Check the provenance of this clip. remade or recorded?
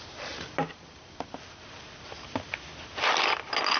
recorded